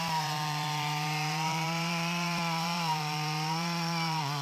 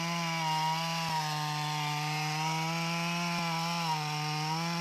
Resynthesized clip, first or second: first